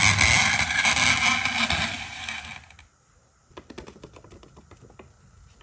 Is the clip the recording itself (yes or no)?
yes